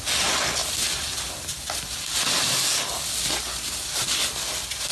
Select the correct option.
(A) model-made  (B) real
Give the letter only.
B